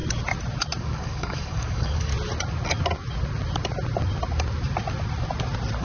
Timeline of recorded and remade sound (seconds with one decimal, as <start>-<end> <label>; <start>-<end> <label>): 0.0-0.8 recorded; 0.8-2.1 remade; 2.1-5.8 recorded